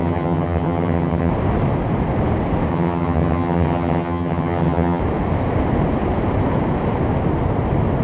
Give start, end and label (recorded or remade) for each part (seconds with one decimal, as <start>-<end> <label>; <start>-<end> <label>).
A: 0.0-1.3 remade; 1.3-2.7 recorded; 2.7-5.0 remade; 5.0-8.0 recorded